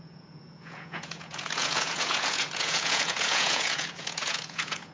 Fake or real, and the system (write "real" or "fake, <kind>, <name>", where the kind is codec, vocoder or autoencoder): fake, vocoder, Vocos